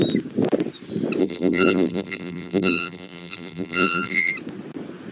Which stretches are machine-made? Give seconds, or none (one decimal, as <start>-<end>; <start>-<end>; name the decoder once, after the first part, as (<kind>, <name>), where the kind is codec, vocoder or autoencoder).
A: 1.2-4.3 (vocoder, BigVGAN v2)